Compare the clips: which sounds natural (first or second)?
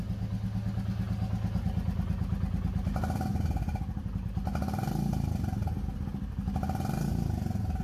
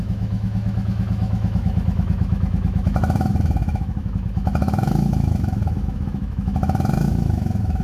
first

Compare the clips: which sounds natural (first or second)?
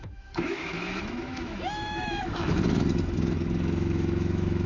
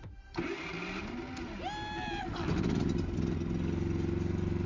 second